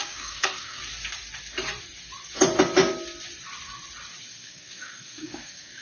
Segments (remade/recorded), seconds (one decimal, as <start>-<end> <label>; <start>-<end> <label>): 0.0-0.8 remade; 0.8-4.3 recorded; 4.3-5.8 remade